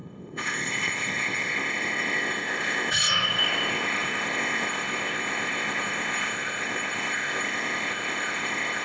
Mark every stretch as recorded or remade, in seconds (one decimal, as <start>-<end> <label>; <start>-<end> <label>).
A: 0.0-8.8 remade